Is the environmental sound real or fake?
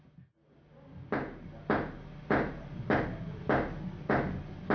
real